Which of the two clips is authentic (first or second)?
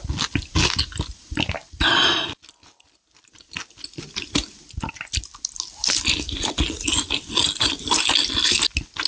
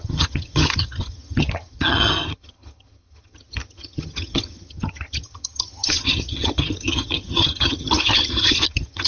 first